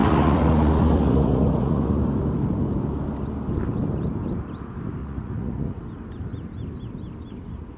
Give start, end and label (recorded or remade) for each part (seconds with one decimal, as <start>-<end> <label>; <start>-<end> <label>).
0.0-2.0 remade; 2.0-5.0 recorded; 5.0-5.8 remade; 5.8-7.8 recorded